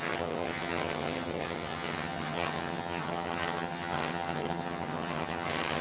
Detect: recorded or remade remade